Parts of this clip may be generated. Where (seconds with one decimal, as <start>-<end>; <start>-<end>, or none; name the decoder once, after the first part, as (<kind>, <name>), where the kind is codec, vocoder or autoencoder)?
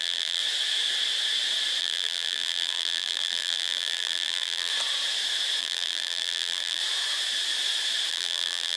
0.0-0.4 (vocoder, BigVGAN v2); 1.8-4.7; 5.6-6.8; 8.1-8.8